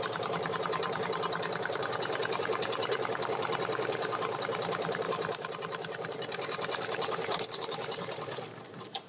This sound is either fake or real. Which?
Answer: fake